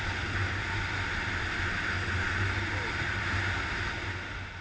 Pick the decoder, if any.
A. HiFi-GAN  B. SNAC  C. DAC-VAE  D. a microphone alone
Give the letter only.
D